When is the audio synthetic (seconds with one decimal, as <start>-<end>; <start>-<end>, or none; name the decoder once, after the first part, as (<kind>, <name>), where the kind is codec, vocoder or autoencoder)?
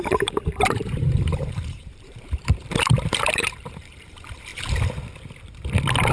0.0-4.5 (vocoder, BigVGAN v2)